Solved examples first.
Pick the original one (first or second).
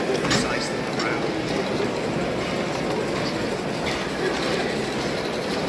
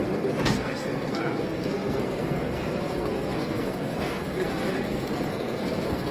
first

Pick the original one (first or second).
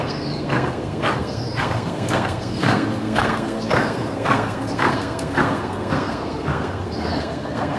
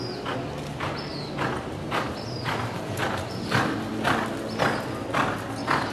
second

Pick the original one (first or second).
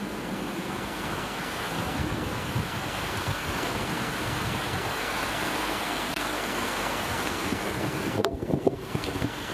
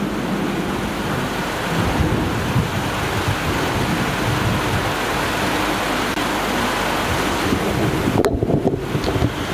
second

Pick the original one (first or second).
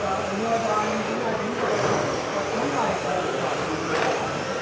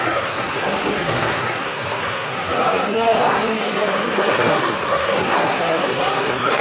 first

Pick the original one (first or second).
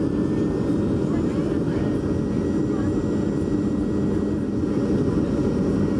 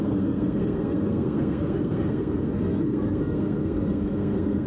first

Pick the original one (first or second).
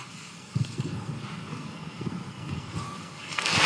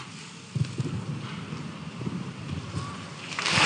second